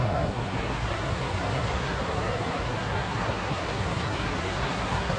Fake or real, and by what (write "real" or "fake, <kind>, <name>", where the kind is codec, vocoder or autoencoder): fake, codec, SNAC